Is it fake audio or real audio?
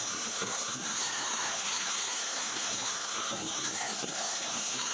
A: fake